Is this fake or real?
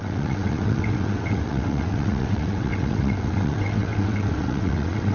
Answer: fake